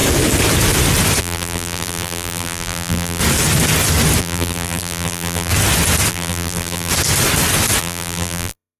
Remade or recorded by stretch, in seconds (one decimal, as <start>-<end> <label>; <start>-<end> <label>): 0.0-1.2 recorded; 1.2-3.2 remade; 3.2-4.2 recorded; 4.2-5.5 remade; 5.5-6.1 recorded; 6.1-6.9 remade; 6.9-7.8 recorded; 7.8-8.8 remade